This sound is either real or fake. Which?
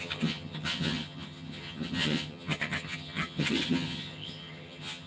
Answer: fake